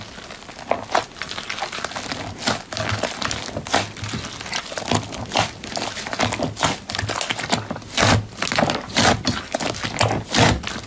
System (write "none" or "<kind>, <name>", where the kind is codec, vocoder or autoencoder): none